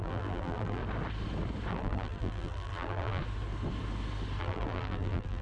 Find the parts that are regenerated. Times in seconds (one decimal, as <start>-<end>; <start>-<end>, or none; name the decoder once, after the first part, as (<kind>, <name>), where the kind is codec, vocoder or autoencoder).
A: 0.0-0.8 (vocoder, BigVGAN v2); 1.7-3.2; 4.4-5.4

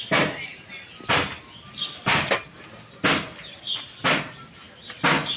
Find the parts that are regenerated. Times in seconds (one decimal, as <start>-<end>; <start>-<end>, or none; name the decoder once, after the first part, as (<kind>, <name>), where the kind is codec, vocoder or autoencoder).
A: none

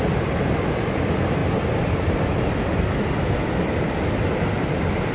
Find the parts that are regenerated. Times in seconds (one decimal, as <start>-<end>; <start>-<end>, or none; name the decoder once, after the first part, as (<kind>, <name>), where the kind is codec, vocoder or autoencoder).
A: none

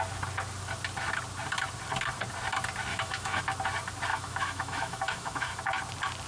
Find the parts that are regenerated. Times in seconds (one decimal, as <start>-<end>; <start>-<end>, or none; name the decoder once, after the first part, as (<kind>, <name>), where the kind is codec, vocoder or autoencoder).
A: 2.9-3.4 (autoencoder, DAC-VAE); 4.1-5.6